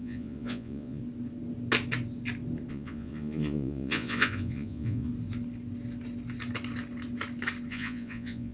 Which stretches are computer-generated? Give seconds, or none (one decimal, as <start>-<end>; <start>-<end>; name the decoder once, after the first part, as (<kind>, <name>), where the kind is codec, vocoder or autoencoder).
0.0-1.0 (vocoder, Vocos); 2.7-5.1; 7.7-8.5